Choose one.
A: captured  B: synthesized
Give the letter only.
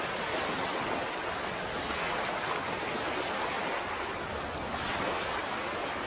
A